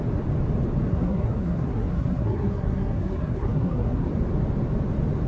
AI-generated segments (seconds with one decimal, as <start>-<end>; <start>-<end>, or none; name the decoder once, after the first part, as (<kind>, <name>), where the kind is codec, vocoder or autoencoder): 0.9-4.1 (codec, SNAC)